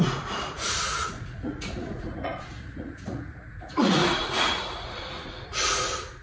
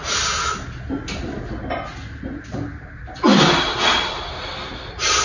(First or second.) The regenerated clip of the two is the first